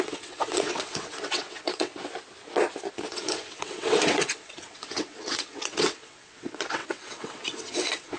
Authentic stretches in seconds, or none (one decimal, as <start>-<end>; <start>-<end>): 1.9-3.1